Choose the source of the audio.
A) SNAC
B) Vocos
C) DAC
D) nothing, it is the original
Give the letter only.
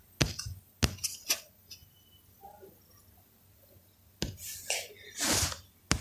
D